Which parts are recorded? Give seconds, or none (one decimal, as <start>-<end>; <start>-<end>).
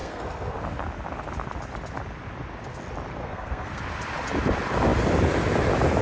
0.6-3.2; 3.8-6.0